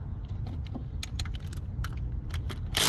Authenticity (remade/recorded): recorded